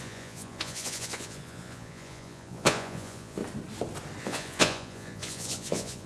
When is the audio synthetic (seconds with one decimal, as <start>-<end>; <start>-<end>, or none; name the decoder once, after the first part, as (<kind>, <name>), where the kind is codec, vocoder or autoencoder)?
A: 0.0-3.4 (vocoder, Vocos); 4.2-6.1

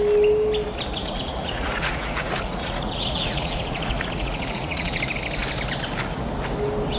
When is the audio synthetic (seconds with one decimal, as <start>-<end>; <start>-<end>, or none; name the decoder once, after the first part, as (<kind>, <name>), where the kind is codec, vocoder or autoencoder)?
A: 1.0-5.0 (vocoder, Vocos)